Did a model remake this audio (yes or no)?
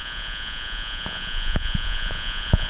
yes